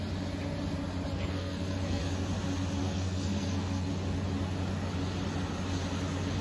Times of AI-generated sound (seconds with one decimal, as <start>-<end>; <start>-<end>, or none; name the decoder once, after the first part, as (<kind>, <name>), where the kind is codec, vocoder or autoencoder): 1.1-2.1 (codec, SNAC); 2.8-3.9